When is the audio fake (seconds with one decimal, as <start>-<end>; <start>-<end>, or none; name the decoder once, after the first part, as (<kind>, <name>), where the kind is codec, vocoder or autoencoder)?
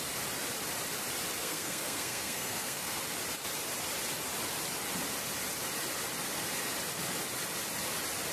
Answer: 1.4-3.0 (codec, SNAC)